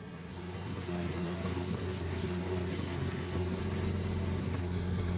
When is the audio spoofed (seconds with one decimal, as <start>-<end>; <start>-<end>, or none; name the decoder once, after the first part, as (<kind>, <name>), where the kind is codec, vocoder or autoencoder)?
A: 0.0-3.6 (codec, SNAC); 4.4-5.2